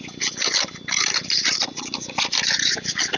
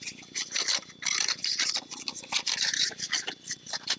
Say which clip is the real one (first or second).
first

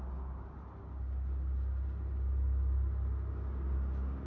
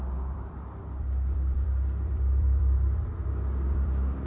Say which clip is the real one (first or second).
first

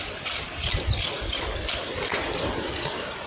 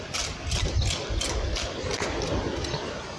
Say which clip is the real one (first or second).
second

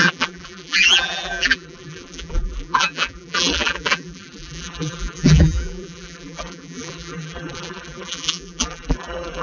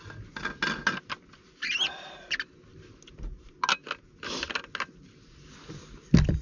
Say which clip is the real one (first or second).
second